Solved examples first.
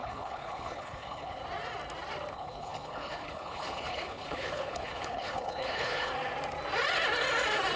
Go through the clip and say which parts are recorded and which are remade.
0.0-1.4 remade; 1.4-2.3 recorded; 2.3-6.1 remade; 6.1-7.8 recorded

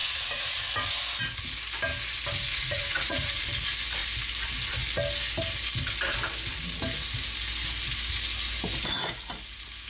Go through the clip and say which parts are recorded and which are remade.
0.0-0.7 remade; 0.7-2.5 recorded; 2.5-3.4 remade; 3.4-9.9 recorded

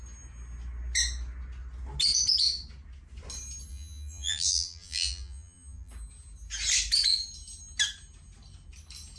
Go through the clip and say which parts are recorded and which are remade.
0.0-3.7 recorded; 3.7-5.9 remade; 5.9-9.2 recorded

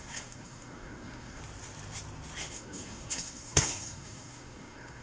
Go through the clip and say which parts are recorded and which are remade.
0.0-1.4 remade; 1.4-2.5 recorded; 2.5-5.0 remade